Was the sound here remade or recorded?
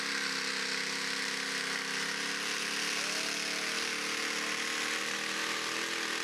recorded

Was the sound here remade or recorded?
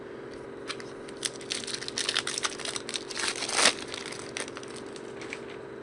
recorded